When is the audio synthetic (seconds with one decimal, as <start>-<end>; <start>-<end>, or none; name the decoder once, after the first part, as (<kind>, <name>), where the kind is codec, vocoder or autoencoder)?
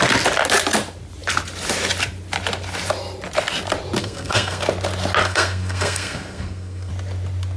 4.0-4.6 (codec, SNAC); 5.2-6.9